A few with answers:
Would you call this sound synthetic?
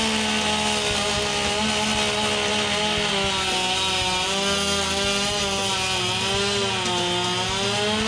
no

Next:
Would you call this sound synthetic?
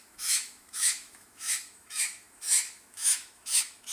yes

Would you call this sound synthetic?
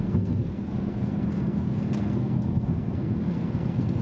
yes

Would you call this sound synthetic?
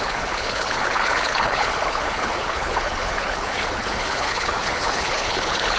yes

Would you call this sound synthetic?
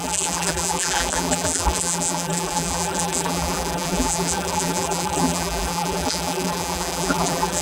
yes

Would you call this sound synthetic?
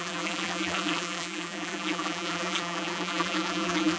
yes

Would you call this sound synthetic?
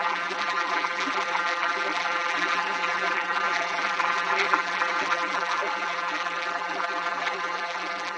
yes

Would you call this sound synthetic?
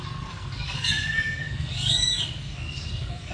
yes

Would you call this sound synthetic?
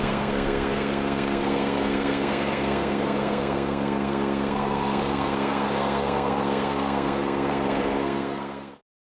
yes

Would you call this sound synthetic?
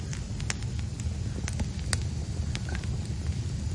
no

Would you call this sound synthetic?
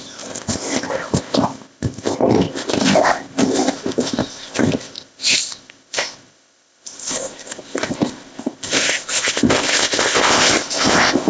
yes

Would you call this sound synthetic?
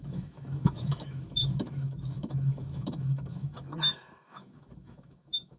yes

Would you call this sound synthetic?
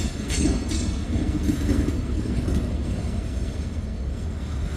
yes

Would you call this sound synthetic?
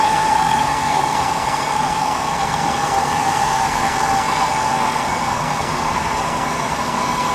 yes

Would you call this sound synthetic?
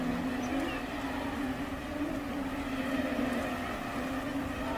no